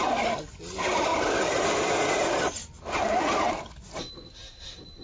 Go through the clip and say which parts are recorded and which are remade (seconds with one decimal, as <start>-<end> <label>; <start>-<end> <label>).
0.0-5.0 recorded